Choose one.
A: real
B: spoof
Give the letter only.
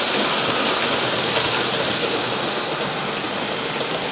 A